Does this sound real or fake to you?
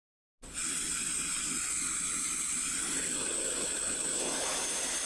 real